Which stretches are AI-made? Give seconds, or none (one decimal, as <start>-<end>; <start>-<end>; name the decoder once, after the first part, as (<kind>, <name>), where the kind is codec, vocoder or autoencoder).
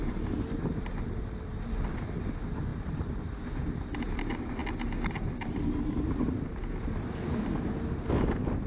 2.7-3.3 (vocoder, BigVGAN v2)